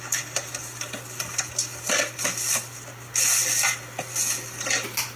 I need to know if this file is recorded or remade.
recorded